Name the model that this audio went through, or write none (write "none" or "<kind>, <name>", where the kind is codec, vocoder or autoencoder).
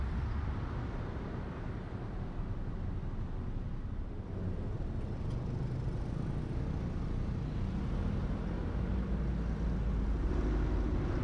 none